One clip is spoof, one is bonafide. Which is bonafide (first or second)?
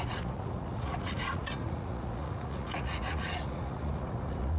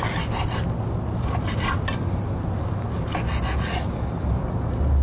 second